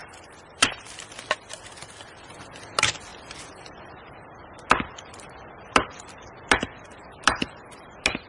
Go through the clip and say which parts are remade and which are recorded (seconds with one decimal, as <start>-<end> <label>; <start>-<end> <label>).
0.0-8.3 recorded